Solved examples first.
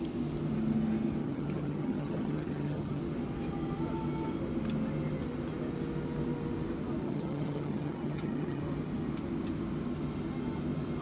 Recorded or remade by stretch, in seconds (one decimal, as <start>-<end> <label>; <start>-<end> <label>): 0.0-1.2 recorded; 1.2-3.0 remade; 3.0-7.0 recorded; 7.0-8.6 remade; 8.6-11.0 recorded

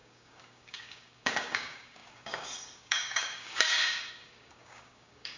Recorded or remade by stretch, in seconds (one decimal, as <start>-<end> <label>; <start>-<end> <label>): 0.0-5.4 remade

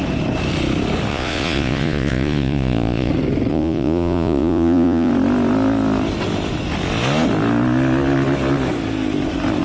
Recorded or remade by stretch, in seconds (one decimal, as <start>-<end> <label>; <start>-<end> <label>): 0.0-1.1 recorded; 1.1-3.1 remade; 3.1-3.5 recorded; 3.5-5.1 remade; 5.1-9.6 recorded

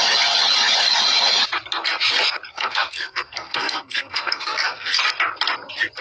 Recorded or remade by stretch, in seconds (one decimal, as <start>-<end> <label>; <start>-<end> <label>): 0.0-2.5 recorded; 2.5-5.0 remade; 5.0-6.0 recorded